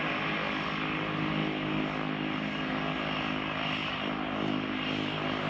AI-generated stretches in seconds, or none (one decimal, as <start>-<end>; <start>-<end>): none